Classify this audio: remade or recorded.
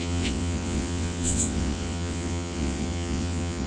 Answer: remade